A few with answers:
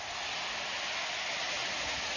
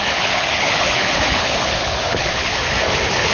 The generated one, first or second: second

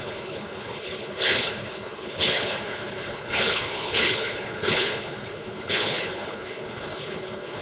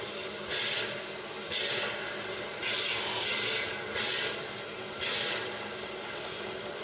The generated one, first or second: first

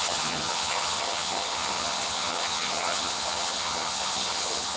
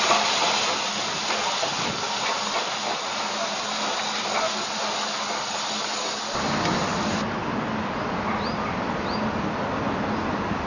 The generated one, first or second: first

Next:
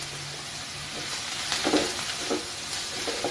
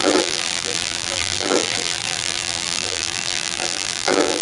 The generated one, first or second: second